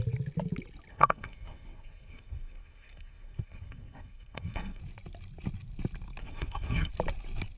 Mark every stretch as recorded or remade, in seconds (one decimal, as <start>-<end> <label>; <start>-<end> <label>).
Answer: 0.0-0.9 recorded; 0.9-4.8 remade; 4.8-6.2 recorded; 6.2-6.9 remade; 6.9-7.6 recorded